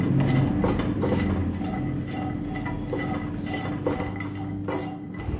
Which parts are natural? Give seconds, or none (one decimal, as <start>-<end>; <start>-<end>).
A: 0.0-5.4